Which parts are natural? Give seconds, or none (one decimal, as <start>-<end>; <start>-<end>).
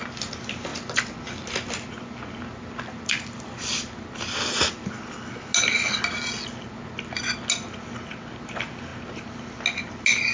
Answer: 0.0-10.3